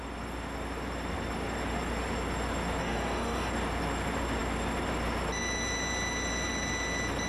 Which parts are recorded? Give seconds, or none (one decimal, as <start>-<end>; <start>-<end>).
0.0-2.8; 3.5-7.3